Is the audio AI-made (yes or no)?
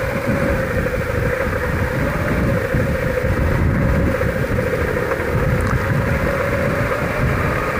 no